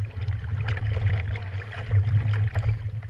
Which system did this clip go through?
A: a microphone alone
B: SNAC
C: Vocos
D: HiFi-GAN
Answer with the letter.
A